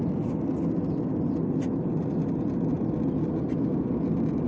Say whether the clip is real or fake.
real